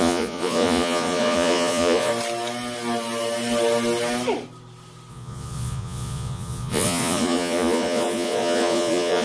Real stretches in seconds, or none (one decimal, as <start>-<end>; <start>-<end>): 2.1-5.1